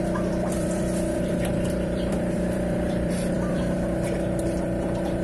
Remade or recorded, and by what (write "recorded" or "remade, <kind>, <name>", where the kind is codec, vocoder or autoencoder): remade, vocoder, BigVGAN v2